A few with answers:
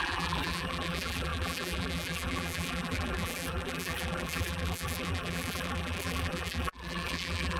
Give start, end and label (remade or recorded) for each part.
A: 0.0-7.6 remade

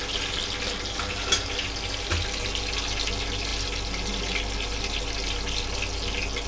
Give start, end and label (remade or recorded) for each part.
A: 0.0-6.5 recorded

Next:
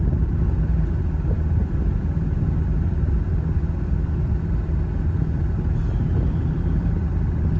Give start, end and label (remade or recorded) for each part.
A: 0.0-1.0 recorded; 1.0-4.5 remade; 4.5-7.6 recorded

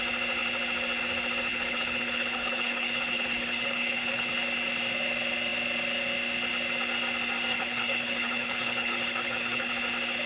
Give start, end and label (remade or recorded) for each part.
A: 0.0-1.5 recorded; 1.5-4.3 remade; 4.3-7.5 recorded; 7.5-9.7 remade; 9.7-10.3 recorded

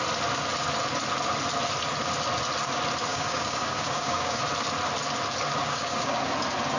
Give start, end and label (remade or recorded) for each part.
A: 0.0-3.1 recorded; 3.1-4.4 remade; 4.4-5.6 recorded; 5.6-6.3 remade; 6.3-6.8 recorded